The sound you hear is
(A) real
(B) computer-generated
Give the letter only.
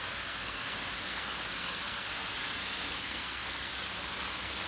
B